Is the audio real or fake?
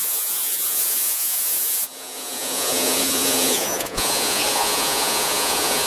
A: fake